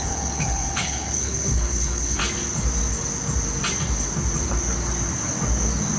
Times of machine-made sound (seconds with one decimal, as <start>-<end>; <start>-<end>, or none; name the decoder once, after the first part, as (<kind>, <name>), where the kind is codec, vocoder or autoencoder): 0.0-2.2 (codec, HILCodec)